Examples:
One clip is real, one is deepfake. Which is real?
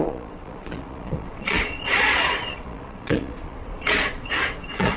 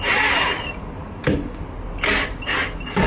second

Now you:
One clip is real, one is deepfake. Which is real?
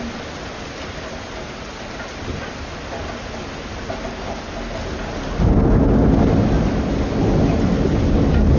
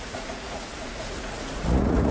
first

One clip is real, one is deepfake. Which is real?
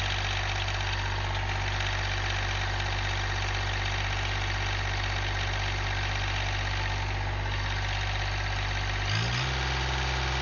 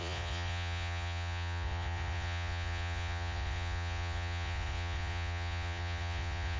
first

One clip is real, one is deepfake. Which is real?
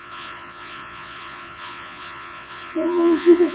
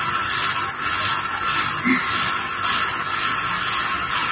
second